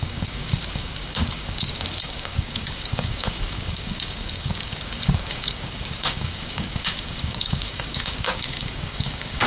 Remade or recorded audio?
remade